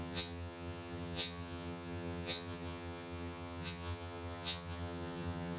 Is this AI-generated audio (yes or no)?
yes